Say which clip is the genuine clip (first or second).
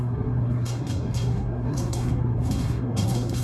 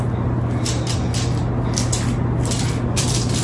second